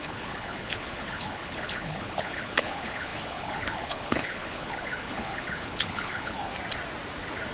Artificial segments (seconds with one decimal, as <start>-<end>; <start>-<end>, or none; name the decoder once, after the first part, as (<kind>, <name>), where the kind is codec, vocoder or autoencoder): 0.0-6.5 (codec, HILCodec)